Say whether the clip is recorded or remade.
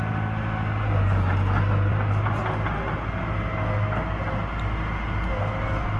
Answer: recorded